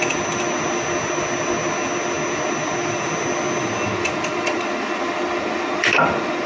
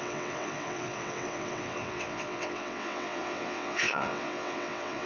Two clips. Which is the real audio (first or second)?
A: first